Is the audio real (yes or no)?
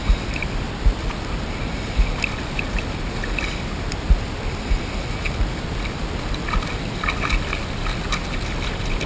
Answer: yes